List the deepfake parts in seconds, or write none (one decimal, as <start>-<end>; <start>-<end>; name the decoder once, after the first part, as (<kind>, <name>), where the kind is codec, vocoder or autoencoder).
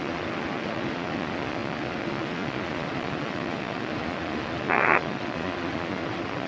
0.0-6.5 (vocoder, Vocos)